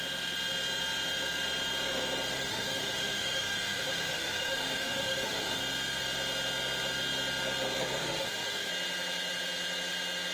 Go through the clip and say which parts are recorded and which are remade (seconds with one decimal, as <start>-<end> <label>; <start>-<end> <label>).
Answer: 0.0-2.5 recorded; 2.5-5.6 remade; 5.6-8.0 recorded; 8.0-8.7 remade; 8.7-10.3 recorded